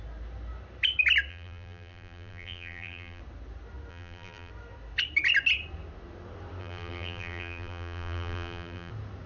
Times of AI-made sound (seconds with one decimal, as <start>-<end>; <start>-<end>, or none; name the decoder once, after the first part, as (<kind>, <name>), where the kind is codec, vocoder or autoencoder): 1.3-3.2 (vocoder, BigVGAN v2); 3.9-4.5; 6.6-8.9